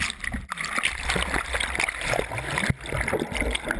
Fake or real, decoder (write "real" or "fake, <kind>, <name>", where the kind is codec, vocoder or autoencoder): real